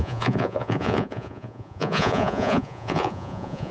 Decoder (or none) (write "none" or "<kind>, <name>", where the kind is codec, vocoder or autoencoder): vocoder, Vocos